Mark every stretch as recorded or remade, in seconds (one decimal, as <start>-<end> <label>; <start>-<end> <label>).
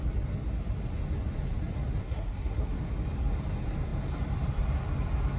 0.0-2.0 recorded; 2.0-2.8 remade; 2.8-5.4 recorded